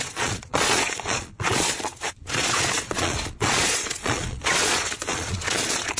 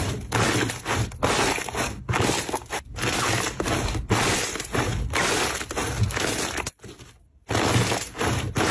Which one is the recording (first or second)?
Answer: second